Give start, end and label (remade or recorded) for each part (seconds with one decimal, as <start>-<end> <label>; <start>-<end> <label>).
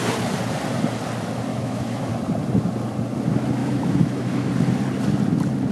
0.0-1.5 recorded; 1.5-2.1 remade; 2.1-3.6 recorded; 3.6-4.5 remade; 4.5-5.7 recorded